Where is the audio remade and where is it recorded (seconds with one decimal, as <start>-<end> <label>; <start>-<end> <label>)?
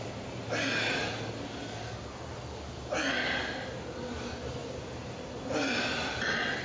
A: 0.0-6.6 recorded